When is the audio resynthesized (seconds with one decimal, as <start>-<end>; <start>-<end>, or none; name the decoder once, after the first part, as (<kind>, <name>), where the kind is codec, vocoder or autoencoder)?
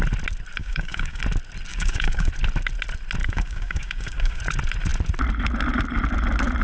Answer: 0.6-1.2 (codec, DAC); 1.7-2.3; 3.2-4.4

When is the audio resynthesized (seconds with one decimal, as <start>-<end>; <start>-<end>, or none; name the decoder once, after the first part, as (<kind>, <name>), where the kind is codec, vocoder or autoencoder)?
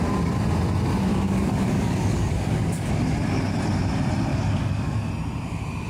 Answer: 1.1-3.0 (codec, DAC); 4.3-5.1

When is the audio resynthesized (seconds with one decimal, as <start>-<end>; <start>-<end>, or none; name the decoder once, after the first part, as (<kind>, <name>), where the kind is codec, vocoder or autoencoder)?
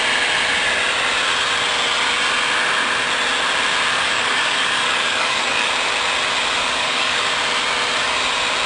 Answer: 3.9-5.7 (codec, DAC); 6.6-7.3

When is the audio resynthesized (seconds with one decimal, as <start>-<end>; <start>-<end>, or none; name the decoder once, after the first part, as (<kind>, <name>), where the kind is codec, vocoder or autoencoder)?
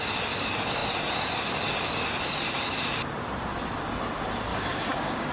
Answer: 4.5-5.3 (codec, DAC)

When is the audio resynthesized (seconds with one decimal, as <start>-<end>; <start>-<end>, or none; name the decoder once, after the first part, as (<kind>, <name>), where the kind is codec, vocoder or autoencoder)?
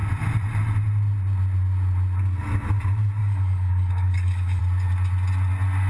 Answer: 3.2-4.6 (codec, DAC)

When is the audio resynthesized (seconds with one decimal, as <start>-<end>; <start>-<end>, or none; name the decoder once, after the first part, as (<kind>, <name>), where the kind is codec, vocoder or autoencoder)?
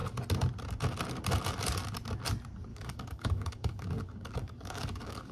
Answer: 2.7-5.3 (codec, DAC)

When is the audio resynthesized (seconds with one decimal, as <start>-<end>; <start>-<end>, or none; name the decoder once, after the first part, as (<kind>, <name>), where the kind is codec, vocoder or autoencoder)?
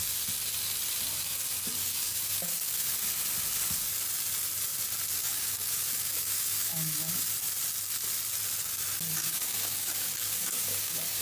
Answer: 1.8-2.9 (codec, DAC); 5.2-7.3; 9.2-11.2